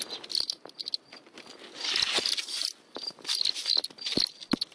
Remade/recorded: recorded